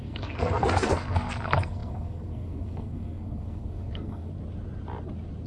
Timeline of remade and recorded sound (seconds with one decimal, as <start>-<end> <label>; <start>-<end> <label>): 0.0-4.3 remade; 4.3-5.5 recorded